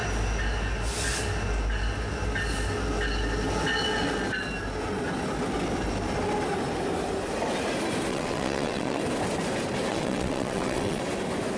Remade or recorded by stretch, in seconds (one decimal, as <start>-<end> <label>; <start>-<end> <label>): 0.0-8.1 recorded; 8.1-9.0 remade; 9.0-9.9 recorded; 9.9-11.0 remade; 11.0-11.6 recorded